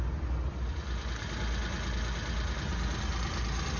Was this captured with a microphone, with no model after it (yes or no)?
yes